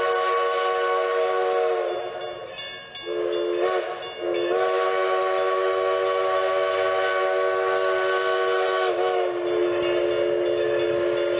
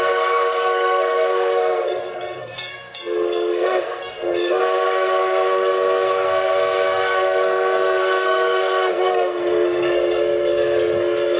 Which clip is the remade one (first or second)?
second